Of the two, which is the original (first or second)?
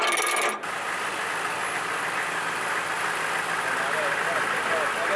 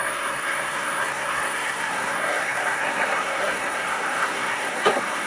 first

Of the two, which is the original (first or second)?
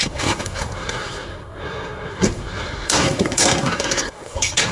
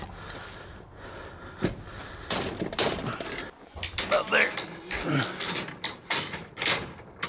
second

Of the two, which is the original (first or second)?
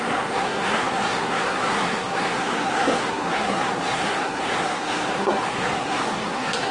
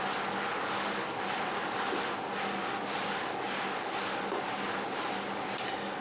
second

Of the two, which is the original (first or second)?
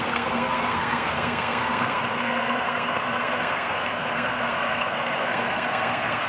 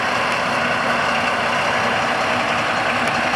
second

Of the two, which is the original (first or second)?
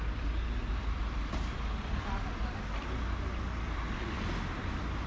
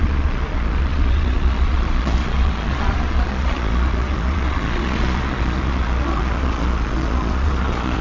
first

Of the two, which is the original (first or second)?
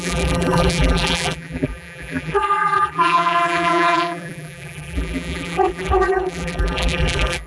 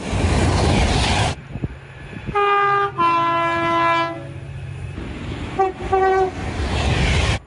second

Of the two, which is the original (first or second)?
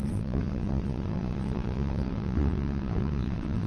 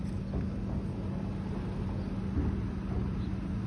second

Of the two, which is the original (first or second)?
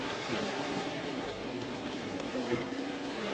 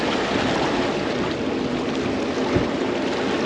second